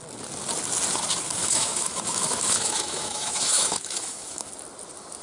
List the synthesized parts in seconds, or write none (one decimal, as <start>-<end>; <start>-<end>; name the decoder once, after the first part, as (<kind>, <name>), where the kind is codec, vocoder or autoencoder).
1.4-4.5 (autoencoder, DAC-VAE)